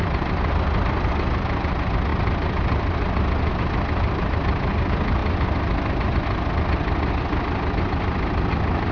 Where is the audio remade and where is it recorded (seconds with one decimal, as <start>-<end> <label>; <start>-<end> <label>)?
0.0-8.9 recorded